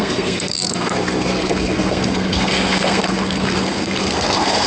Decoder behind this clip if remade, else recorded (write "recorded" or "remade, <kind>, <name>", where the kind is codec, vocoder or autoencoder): remade, codec, SNAC